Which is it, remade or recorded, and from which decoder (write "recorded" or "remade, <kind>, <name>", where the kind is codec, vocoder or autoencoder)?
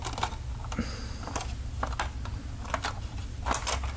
recorded